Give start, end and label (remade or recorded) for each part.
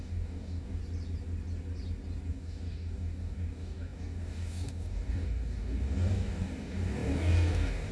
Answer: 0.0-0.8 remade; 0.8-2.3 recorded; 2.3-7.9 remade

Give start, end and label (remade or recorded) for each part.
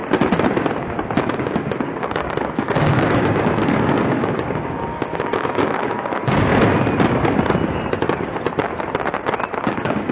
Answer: 0.0-1.2 recorded; 1.2-6.5 remade; 6.5-9.6 recorded; 9.6-10.1 remade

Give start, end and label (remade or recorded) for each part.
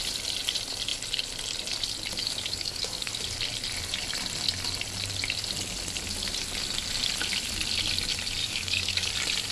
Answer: 0.0-2.2 recorded; 2.2-3.1 remade; 3.1-8.4 recorded; 8.4-9.1 remade; 9.1-9.5 recorded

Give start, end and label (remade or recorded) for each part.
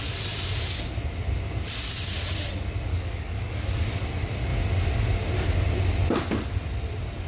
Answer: 0.0-2.9 recorded; 2.9-3.7 remade; 3.7-7.3 recorded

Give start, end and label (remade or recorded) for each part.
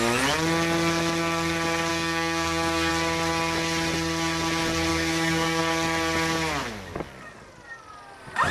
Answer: 0.0-1.9 recorded; 1.9-2.9 remade; 2.9-4.9 recorded; 4.9-5.6 remade; 5.6-8.5 recorded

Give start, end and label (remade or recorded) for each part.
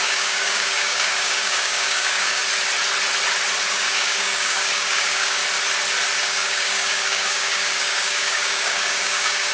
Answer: 0.0-2.4 remade; 2.4-3.7 recorded; 3.7-5.4 remade; 5.4-6.2 recorded; 6.2-9.5 remade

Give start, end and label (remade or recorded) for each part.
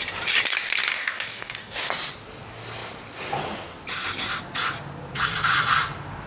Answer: 0.0-0.9 recorded; 0.9-1.9 remade; 1.9-6.3 recorded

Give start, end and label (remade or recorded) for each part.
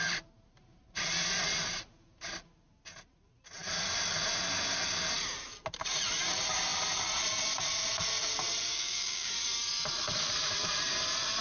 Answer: 0.0-8.7 recorded; 8.7-9.3 remade; 9.3-11.4 recorded